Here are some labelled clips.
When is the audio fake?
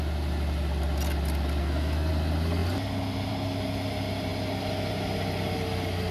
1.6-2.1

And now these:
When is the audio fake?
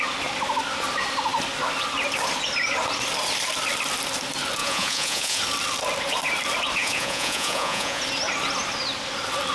4.6-5.4; 6.8-8.0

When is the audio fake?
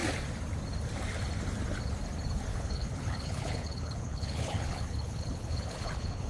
2.5-6.3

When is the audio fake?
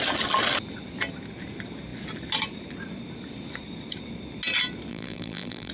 4.9-5.7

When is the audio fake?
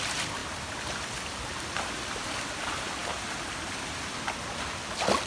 none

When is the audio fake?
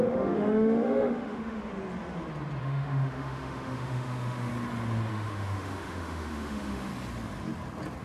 0.0-1.7; 2.6-4.5; 5.1-6.9